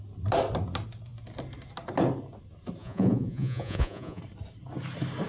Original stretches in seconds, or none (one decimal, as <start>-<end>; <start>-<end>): 0.0-2.8; 4.2-5.3